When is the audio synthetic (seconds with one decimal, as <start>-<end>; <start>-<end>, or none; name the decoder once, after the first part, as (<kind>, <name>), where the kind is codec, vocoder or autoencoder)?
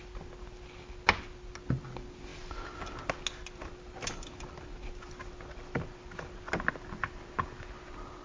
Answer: none